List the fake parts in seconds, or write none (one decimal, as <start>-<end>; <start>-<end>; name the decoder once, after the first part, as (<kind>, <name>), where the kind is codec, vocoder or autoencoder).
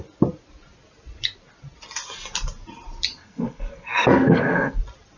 3.2-4.8 (codec, SNAC)